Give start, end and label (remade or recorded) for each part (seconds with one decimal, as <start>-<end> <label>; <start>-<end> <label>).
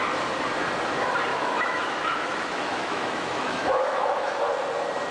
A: 0.0-1.3 recorded; 1.3-4.4 remade; 4.4-5.1 recorded